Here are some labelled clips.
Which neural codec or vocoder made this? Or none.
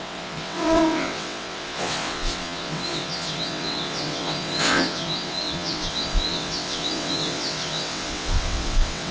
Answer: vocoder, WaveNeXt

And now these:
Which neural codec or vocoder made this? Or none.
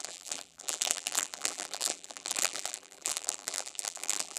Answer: vocoder, BigVGAN v2